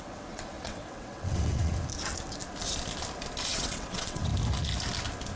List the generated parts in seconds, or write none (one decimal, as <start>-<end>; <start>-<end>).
0.0-1.7; 3.5-4.3